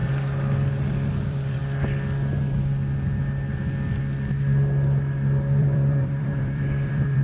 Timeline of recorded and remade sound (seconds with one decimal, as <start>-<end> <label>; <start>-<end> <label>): 0.0-1.1 recorded; 1.1-1.6 remade; 1.6-5.6 recorded; 5.6-7.2 remade

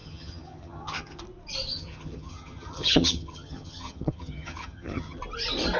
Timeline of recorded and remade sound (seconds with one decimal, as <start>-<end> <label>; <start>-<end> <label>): 0.0-1.2 remade; 1.2-1.7 recorded; 1.7-5.2 remade; 5.2-5.8 recorded

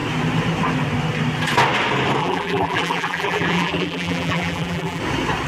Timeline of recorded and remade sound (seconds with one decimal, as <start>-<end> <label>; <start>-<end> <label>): 0.0-2.2 recorded; 2.2-5.0 remade; 5.0-5.5 recorded

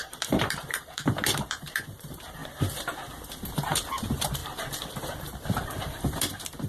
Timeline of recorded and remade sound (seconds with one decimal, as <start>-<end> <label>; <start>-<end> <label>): 0.0-2.4 remade; 2.4-3.4 recorded; 3.4-4.4 remade; 4.4-5.2 recorded; 5.2-6.7 remade

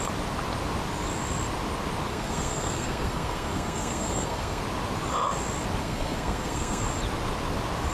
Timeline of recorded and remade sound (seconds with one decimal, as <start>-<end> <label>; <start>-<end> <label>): 0.0-2.1 recorded; 2.1-4.6 remade; 4.6-5.8 recorded; 5.8-6.8 remade; 6.8-7.9 recorded

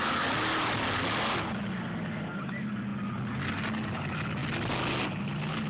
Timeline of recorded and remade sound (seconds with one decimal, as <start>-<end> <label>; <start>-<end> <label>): 0.0-5.7 recorded